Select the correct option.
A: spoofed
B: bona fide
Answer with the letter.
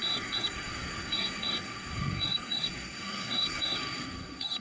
A